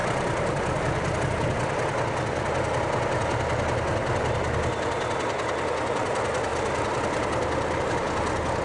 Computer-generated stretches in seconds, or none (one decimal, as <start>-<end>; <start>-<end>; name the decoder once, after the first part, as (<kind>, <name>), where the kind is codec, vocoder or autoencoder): 0.0-1.2 (vocoder, BigVGAN v2); 6.5-7.9